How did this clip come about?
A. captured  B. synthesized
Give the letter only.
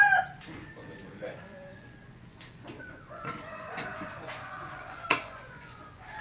B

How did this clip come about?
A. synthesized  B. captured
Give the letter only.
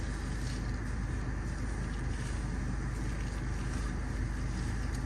B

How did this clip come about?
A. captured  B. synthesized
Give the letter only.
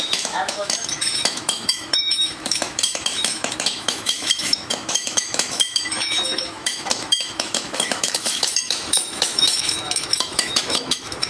B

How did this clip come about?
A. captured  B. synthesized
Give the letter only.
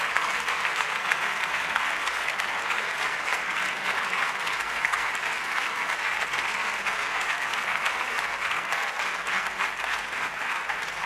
B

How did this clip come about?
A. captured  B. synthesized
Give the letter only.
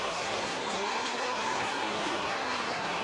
B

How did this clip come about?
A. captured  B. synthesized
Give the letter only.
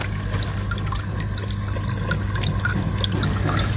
A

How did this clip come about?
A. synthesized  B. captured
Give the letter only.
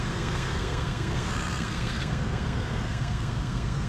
A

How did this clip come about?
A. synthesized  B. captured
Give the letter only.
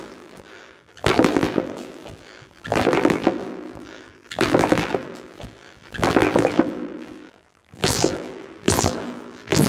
A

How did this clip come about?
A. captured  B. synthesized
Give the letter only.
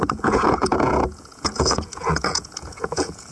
B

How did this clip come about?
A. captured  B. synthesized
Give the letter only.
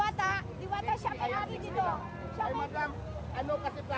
A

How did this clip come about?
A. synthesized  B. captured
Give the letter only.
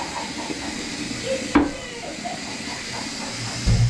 B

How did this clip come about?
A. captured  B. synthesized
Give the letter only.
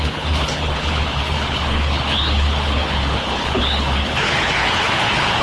B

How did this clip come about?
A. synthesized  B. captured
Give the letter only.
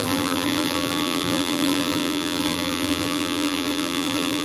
A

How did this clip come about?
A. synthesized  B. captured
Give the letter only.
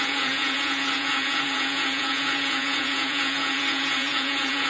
A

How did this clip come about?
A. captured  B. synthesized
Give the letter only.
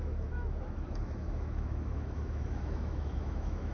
B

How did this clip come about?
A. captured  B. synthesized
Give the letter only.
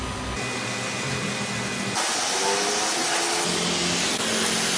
A